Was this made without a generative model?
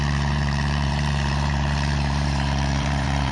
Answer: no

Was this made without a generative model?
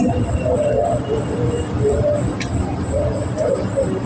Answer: yes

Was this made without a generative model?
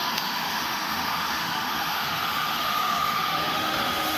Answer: no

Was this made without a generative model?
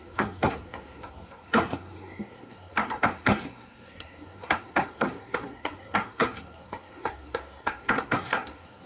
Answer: no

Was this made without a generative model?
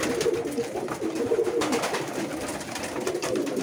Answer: yes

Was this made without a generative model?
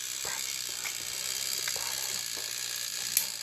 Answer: yes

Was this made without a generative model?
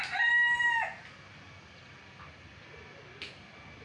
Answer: yes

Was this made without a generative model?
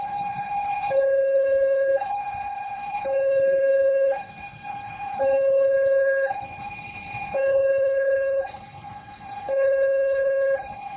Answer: no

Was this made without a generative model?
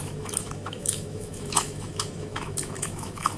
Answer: no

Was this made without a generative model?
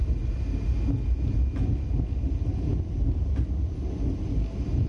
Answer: yes